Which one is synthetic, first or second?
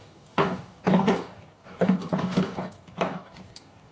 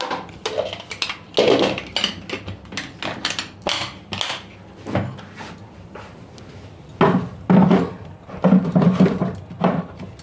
first